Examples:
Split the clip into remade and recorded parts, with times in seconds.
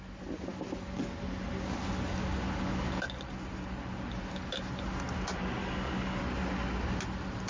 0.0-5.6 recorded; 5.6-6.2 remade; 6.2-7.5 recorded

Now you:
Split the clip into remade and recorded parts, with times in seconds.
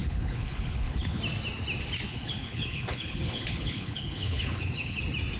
0.0-1.2 remade; 1.2-2.1 recorded; 2.1-5.0 remade; 5.0-5.4 recorded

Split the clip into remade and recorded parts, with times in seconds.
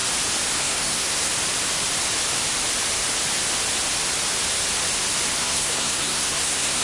0.0-0.6 recorded; 0.6-1.3 remade; 1.3-5.4 recorded; 5.4-6.8 remade